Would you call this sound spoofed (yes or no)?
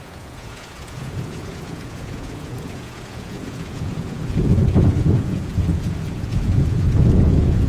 yes